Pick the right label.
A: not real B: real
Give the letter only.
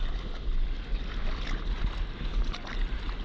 B